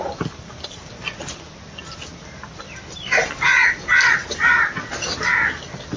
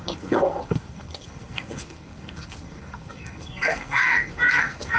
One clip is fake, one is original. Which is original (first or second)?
first